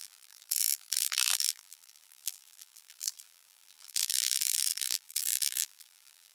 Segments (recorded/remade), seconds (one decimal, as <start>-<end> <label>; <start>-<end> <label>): 0.0-6.3 remade